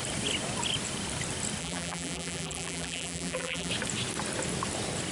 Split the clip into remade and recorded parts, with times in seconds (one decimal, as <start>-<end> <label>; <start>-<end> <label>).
0.0-1.6 recorded; 1.6-3.7 remade; 3.7-5.1 recorded